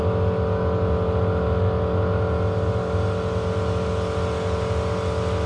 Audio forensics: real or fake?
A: real